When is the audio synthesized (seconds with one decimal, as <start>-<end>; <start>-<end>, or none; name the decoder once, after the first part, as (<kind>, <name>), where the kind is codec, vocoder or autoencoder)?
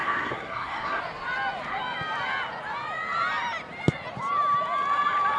0.0-1.0 (codec, SNAC)